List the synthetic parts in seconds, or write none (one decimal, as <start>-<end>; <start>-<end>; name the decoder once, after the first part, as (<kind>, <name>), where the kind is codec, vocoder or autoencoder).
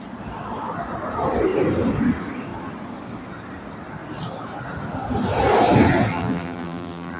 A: 6.1-7.2 (vocoder, BigVGAN v2)